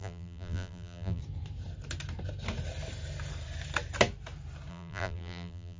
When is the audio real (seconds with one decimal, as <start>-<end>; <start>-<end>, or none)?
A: 1.2-4.7